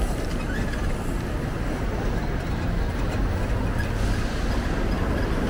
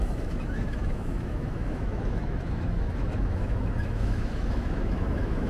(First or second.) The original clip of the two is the first